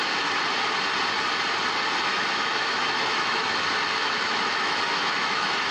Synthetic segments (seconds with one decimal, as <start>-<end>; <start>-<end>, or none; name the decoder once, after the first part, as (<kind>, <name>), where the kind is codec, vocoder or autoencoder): 2.1-5.7 (autoencoder, DAC-VAE)